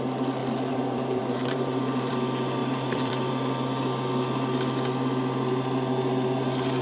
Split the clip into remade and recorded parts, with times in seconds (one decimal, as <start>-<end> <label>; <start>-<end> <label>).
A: 0.0-0.4 recorded; 0.4-2.1 remade; 2.1-2.6 recorded; 2.6-3.3 remade; 3.3-6.8 recorded